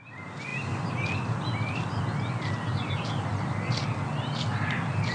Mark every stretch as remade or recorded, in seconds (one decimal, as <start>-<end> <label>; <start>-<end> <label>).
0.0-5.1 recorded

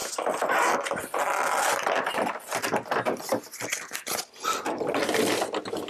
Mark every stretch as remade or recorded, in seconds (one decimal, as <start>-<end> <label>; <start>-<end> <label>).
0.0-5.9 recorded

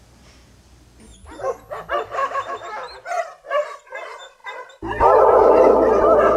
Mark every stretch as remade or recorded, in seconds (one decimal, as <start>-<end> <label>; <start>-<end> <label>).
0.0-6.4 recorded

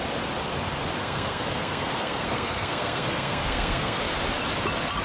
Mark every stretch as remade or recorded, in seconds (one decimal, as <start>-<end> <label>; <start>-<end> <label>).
0.0-1.0 recorded; 1.0-4.0 remade; 4.0-5.0 recorded

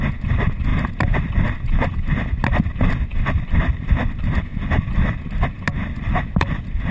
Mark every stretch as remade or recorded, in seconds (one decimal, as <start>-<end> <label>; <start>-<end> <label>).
0.0-6.9 recorded